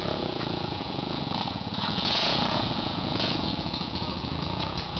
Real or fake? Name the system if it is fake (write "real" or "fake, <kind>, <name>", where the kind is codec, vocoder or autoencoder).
fake, vocoder, Vocos